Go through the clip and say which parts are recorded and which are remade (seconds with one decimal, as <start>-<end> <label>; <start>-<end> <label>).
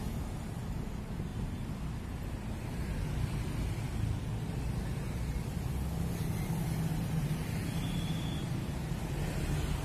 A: 0.0-6.9 recorded; 6.9-9.1 remade; 9.1-9.8 recorded